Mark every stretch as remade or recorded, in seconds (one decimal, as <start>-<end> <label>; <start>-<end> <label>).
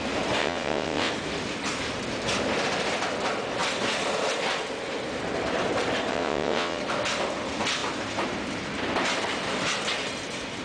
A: 0.0-0.4 recorded; 0.4-1.1 remade; 1.1-6.1 recorded; 6.1-6.8 remade; 6.8-10.6 recorded